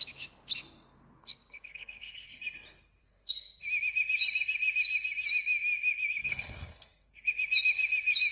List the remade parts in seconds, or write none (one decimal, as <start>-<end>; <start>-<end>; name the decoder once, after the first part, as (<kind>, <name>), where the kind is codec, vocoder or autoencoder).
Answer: 1.2-2.4 (codec, SNAC); 3.0-3.6; 6.2-7.1